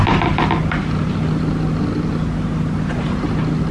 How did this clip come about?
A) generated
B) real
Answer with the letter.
B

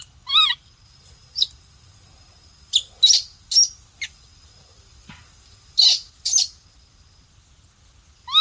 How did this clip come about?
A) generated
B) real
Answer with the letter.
B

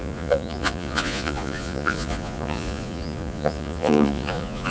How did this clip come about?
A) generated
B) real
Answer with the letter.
A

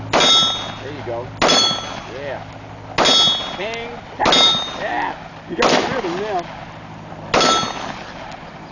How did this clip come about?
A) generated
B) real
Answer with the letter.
B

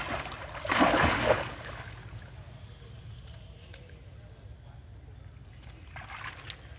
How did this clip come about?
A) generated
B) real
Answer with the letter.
B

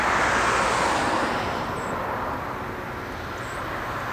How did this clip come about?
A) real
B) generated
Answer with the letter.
A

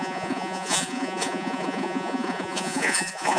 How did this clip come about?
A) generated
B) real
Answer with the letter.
A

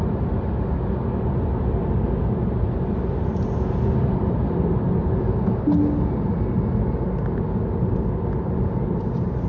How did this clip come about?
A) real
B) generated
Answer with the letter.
A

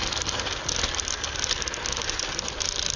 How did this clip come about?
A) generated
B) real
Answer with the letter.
B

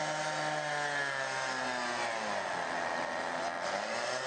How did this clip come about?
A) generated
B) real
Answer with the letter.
B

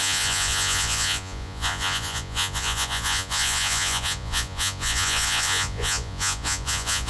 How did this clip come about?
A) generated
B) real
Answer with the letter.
A